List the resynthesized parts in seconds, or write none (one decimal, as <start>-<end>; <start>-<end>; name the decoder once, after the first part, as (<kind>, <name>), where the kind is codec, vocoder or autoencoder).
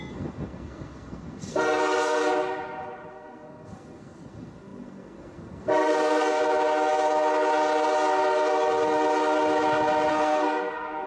0.0-2.2 (codec, SNAC); 3.1-6.4; 10.1-11.1